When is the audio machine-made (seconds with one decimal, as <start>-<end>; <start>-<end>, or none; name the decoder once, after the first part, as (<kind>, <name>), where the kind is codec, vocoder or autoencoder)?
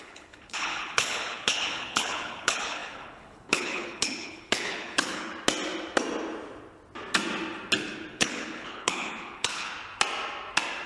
0.0-5.3 (codec, HILCodec); 8.1-9.7